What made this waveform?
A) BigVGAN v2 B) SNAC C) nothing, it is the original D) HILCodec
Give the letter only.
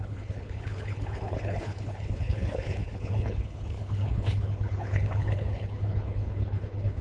D